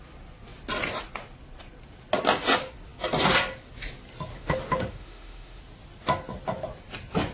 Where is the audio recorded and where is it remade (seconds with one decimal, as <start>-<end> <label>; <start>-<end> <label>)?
0.0-4.3 recorded; 4.3-5.6 remade; 5.6-7.3 recorded